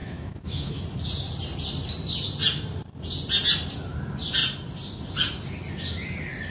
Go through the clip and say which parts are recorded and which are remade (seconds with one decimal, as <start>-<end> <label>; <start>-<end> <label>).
0.0-0.8 remade; 0.8-6.5 recorded